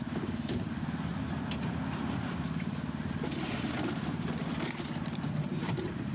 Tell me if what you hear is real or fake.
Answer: fake